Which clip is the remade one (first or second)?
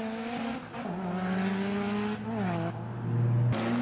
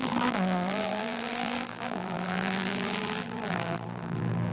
second